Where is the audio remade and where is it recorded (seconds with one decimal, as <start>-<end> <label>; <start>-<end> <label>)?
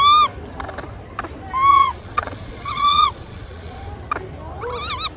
0.0-1.7 recorded; 1.7-3.9 remade; 3.9-5.2 recorded